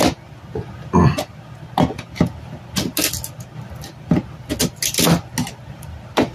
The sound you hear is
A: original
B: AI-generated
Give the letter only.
A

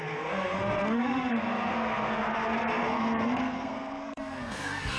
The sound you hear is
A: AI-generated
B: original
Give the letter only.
A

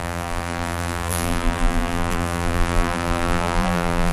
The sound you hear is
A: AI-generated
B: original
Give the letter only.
A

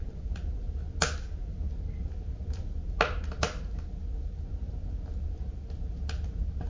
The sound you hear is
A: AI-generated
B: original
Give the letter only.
B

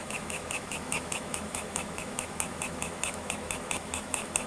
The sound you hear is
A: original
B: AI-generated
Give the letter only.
B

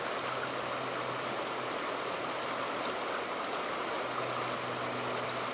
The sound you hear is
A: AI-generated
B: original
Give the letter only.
B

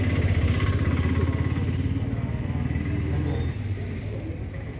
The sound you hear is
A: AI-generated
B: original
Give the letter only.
B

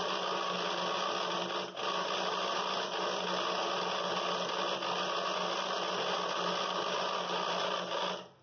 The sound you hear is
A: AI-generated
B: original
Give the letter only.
B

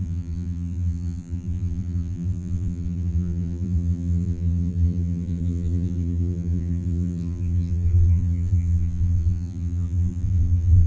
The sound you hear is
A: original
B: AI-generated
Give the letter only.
B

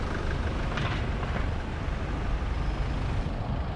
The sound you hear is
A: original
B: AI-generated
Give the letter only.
A